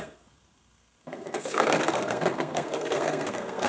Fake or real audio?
fake